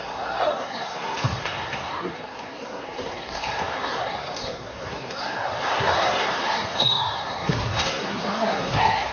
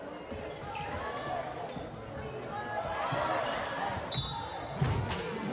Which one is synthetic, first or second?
first